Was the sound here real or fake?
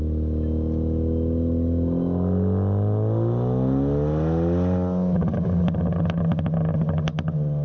real